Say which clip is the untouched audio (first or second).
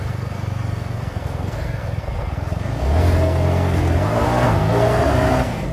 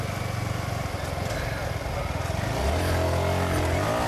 second